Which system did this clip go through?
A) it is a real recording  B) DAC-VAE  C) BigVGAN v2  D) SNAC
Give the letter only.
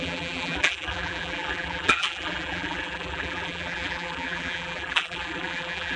C